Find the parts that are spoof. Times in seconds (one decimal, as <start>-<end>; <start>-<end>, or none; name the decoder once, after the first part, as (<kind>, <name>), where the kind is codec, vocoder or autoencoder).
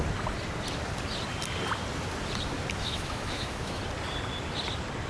2.8-3.8 (autoencoder, DAC-VAE)